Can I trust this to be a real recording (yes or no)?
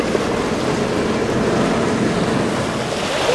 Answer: yes